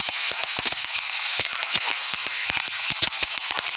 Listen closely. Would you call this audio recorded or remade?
remade